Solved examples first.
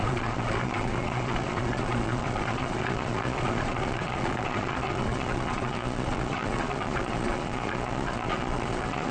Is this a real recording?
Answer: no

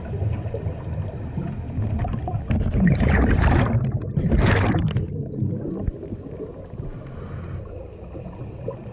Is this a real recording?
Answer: yes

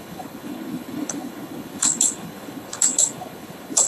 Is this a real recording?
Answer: no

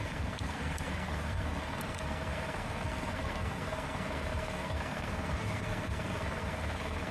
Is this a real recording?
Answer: no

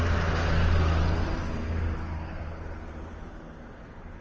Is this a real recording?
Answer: yes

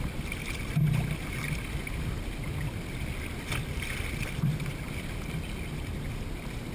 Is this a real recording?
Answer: yes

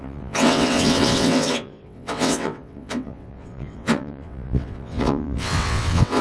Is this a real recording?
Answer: no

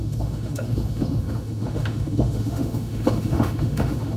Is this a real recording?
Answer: no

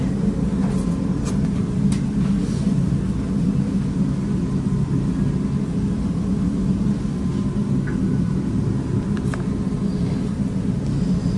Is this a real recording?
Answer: yes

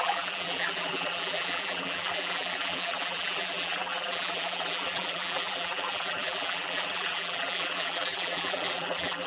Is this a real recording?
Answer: no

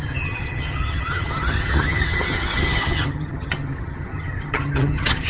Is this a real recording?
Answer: no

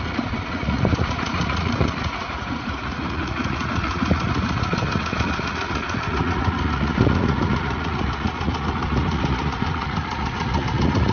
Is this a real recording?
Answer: no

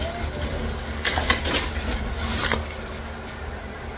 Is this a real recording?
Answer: yes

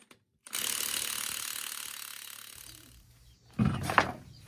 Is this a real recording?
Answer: yes